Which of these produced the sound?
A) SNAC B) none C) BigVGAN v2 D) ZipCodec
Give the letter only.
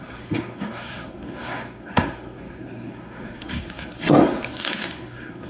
A